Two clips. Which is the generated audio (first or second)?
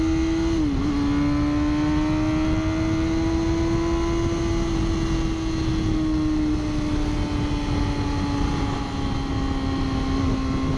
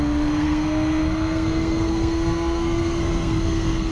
second